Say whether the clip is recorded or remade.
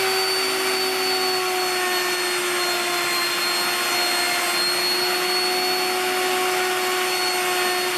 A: recorded